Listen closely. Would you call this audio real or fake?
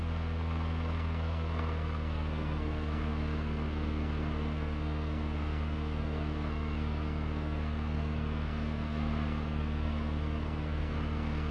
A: fake